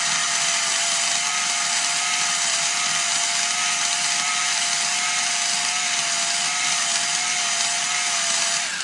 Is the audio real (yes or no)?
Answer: yes